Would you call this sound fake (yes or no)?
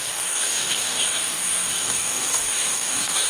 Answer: yes